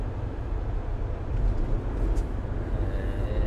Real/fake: real